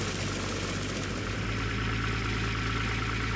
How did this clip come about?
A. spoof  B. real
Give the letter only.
B